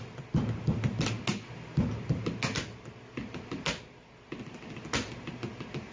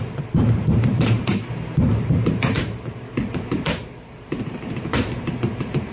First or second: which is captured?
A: first